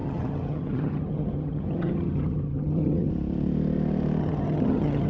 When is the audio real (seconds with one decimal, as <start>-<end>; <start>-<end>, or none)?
3.1-4.2